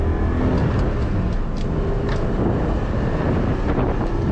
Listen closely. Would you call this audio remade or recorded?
recorded